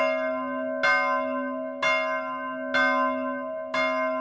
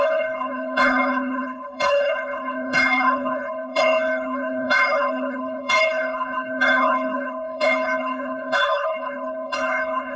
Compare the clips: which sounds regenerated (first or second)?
second